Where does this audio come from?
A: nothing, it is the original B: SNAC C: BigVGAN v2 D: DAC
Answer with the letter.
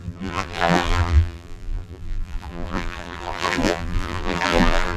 C